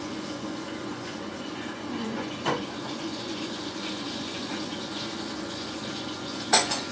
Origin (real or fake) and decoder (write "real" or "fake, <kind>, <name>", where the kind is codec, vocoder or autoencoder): fake, vocoder, Vocos